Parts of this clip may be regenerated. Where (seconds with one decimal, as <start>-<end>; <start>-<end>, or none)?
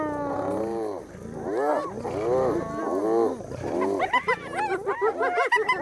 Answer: none